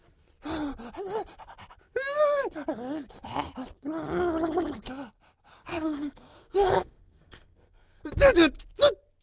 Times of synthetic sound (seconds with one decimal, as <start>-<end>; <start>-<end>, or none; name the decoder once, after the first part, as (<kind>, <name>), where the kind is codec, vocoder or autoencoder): 5.7-8.0 (codec, SNAC)